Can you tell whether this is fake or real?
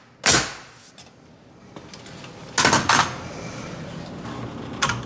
real